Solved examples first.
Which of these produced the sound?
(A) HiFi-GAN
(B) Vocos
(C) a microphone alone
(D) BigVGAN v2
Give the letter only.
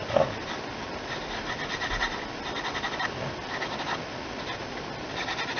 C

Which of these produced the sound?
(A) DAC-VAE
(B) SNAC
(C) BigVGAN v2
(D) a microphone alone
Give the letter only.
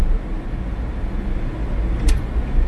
D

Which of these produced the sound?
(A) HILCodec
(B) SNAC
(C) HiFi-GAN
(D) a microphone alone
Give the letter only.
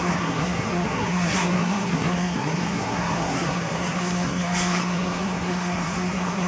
B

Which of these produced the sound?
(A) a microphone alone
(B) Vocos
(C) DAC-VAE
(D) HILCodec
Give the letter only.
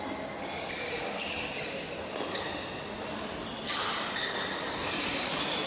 A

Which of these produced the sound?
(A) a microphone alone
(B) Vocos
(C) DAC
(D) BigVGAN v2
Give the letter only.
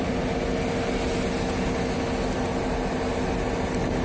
A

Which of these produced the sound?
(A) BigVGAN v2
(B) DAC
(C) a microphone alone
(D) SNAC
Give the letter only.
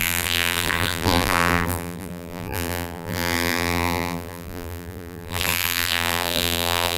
A